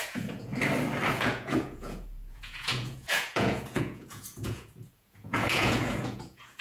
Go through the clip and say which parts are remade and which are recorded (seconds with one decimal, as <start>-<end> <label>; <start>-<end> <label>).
0.0-0.5 remade; 0.5-1.1 recorded; 1.1-6.6 remade